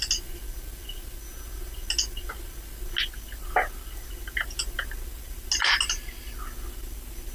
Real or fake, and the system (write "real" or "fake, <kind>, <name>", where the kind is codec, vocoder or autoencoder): real